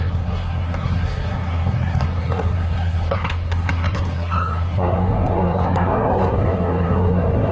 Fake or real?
fake